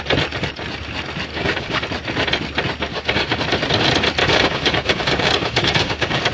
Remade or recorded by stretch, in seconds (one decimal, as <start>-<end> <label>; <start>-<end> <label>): 0.0-1.3 recorded; 1.3-1.8 remade; 1.8-2.9 recorded; 2.9-3.4 remade; 3.4-4.2 recorded; 4.2-6.3 remade